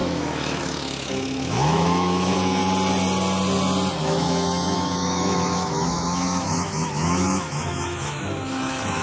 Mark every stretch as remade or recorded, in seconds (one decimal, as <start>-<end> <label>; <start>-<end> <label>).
0.0-2.6 remade; 2.6-4.0 recorded; 4.0-9.0 remade